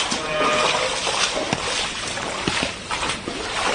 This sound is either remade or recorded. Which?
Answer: recorded